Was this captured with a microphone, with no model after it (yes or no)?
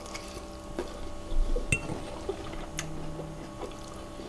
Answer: yes